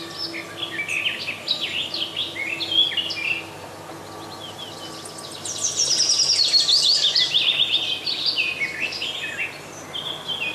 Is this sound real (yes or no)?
yes